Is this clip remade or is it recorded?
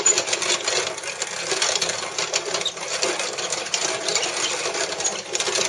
recorded